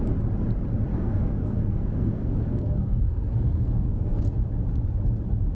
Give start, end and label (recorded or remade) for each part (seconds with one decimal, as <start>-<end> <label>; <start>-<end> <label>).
0.0-0.9 recorded; 0.9-4.2 remade; 4.2-5.5 recorded